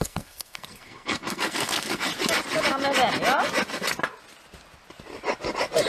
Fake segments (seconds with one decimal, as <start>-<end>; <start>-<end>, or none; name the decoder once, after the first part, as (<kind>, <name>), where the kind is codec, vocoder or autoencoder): 0.0-2.1 (codec, SNAC)